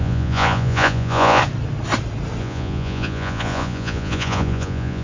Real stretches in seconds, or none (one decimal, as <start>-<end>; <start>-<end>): 1.4-2.4